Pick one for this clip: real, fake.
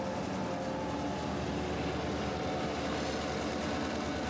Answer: real